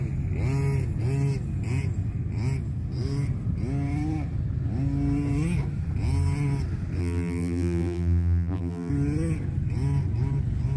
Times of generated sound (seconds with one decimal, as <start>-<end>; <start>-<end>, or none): 7.0-8.9